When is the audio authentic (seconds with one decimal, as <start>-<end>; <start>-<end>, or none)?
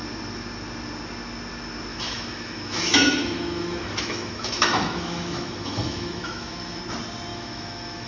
0.0-1.9; 6.8-7.3